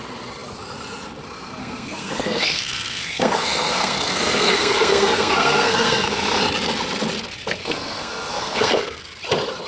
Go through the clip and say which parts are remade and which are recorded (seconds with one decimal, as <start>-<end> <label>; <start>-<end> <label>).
0.0-1.6 recorded; 1.6-6.4 remade; 6.4-7.6 recorded; 7.6-9.0 remade; 9.0-9.7 recorded